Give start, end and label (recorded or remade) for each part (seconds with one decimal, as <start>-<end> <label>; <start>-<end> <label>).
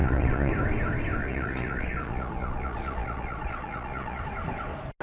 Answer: 0.0-0.5 remade; 0.5-1.2 recorded; 1.2-4.2 remade; 4.2-5.0 recorded